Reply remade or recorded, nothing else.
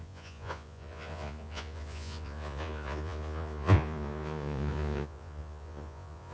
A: remade